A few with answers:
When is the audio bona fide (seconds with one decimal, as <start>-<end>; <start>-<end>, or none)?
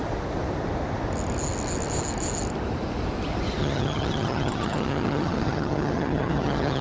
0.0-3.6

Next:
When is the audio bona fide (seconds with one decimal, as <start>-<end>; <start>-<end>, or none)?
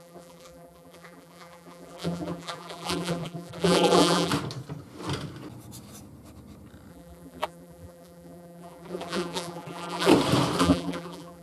4.3-6.9; 10.1-10.6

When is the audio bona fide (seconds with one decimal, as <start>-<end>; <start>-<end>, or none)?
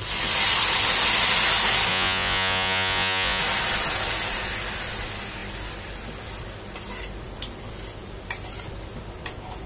0.0-1.9; 3.4-9.7